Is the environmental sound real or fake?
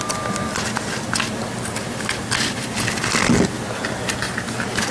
real